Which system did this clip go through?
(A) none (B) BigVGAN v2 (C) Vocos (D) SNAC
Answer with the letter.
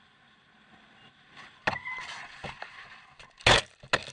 A